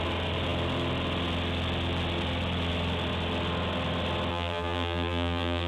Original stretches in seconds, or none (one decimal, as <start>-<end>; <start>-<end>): 0.0-4.3